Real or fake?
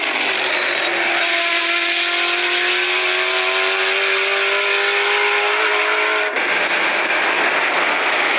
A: real